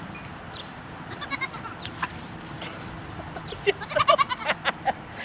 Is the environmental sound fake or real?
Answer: fake